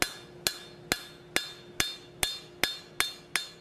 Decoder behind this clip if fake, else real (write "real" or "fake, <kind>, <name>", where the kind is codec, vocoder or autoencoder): real